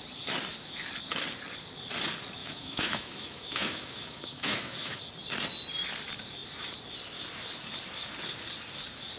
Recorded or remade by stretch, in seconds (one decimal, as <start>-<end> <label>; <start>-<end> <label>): 0.0-2.4 recorded; 2.4-5.0 remade; 5.0-9.2 recorded